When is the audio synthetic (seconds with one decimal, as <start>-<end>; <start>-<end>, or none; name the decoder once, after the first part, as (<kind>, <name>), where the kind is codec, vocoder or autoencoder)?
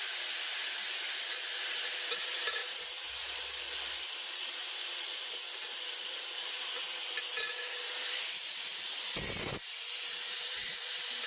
0.0-11.3 (vocoder, BigVGAN v2)